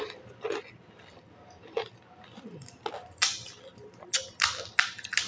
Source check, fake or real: real